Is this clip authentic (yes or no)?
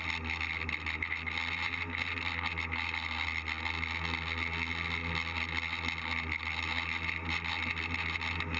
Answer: yes